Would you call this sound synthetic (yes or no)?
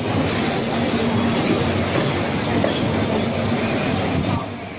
no